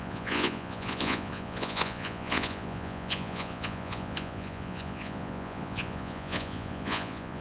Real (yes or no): no